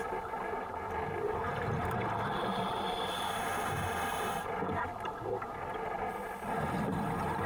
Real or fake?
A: real